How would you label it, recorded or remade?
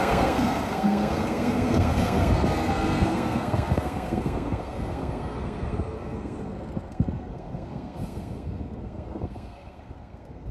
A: remade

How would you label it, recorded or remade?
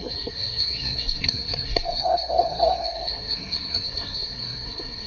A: remade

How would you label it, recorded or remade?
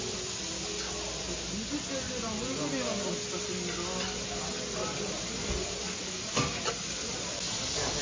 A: recorded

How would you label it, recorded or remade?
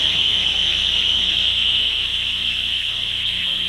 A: remade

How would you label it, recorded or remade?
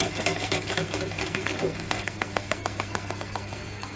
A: remade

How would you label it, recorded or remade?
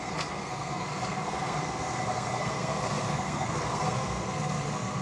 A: remade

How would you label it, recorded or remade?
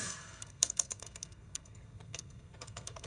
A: remade